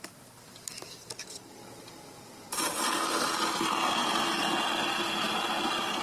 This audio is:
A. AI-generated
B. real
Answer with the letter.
B